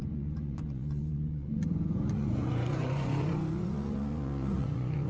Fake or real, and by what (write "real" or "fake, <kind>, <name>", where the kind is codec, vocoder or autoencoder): fake, vocoder, Vocos